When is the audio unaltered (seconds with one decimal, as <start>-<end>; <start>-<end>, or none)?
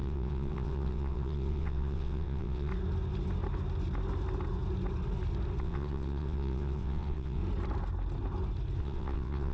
2.7-5.6; 7.4-8.8